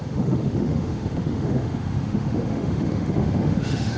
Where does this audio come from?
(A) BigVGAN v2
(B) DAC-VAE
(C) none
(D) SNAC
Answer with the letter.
B